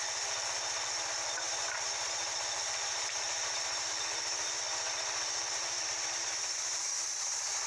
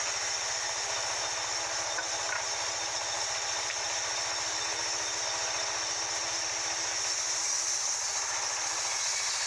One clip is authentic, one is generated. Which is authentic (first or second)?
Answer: second